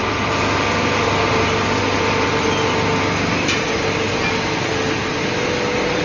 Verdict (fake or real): real